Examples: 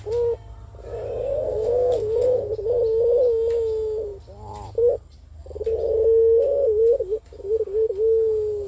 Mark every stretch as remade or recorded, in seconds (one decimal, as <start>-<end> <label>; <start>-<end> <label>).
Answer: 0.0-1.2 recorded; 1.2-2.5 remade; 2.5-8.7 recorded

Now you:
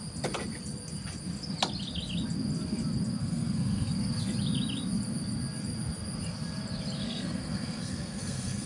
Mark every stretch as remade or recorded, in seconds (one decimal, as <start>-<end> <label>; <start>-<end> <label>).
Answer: 0.0-3.2 recorded; 3.2-3.9 remade; 3.9-7.0 recorded; 7.0-8.7 remade

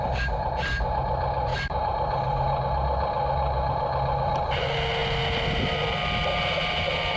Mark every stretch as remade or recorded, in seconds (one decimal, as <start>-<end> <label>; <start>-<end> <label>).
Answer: 0.0-1.5 recorded; 1.5-2.6 remade; 2.6-7.2 recorded

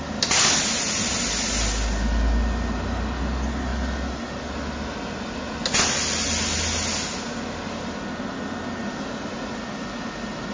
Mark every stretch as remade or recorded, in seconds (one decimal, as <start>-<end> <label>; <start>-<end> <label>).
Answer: 0.0-10.5 recorded

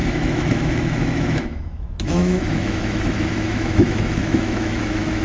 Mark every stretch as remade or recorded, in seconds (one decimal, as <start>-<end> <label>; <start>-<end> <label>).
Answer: 0.0-5.2 remade

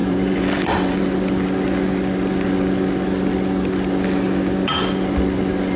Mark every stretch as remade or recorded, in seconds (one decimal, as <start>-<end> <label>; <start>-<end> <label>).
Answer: 0.0-1.0 remade; 1.0-5.8 recorded

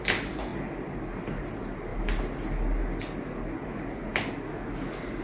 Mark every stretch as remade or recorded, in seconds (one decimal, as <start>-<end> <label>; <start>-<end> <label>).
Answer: 0.0-5.2 recorded